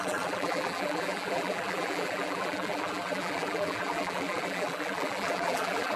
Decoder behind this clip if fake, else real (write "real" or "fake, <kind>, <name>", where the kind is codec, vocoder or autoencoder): fake, vocoder, BigVGAN v2